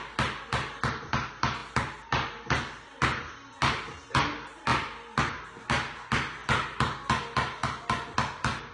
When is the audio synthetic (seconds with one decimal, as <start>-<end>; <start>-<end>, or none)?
none